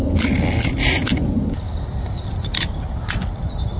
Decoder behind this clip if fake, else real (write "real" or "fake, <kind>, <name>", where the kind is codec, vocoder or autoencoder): real